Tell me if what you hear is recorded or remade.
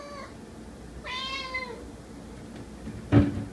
recorded